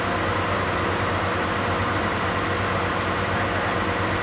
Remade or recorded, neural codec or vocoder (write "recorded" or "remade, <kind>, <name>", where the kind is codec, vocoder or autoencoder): recorded